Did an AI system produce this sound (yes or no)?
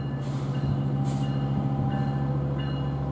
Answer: no